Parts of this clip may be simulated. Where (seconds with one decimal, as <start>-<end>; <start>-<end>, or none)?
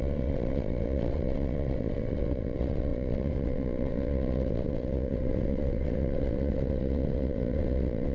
0.0-8.1